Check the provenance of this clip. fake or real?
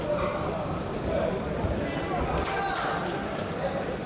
real